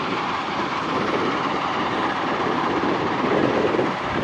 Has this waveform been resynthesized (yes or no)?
yes